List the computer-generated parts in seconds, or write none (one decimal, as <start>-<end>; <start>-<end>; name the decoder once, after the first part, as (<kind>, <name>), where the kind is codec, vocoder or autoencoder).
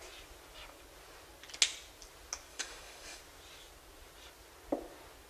2.5-3.2 (codec, DAC)